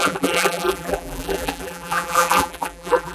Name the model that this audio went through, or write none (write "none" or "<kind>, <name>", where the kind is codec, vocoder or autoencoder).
vocoder, BigVGAN v2